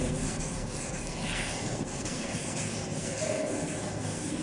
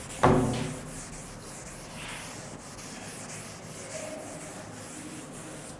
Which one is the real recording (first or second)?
second